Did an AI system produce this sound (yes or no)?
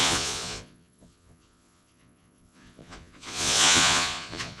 yes